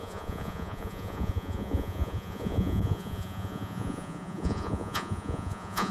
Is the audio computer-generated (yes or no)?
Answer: yes